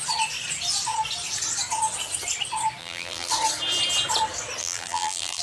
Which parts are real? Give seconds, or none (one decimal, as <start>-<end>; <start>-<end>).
0.0-2.8; 3.3-4.6